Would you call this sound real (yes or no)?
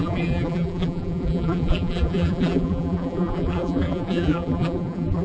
no